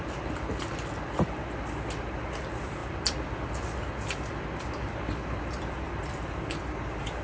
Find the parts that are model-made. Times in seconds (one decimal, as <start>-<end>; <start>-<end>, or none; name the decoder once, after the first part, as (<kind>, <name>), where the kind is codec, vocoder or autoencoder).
none